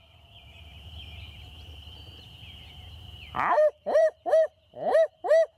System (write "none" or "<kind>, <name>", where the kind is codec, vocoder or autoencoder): vocoder, BigVGAN v2